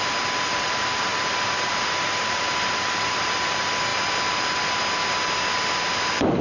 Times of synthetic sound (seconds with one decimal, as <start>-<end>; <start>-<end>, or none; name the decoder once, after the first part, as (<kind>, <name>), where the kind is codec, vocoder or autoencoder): 0.0-3.9 (vocoder, BigVGAN v2)